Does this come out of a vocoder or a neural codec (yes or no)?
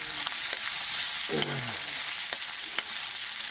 no